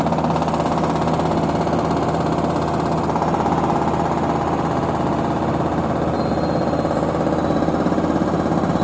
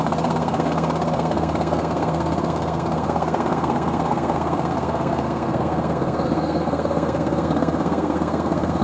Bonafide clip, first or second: first